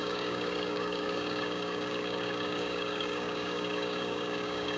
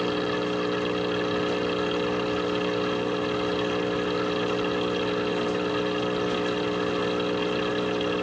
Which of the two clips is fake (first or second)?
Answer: first